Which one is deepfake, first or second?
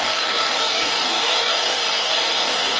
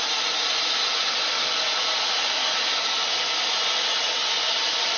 first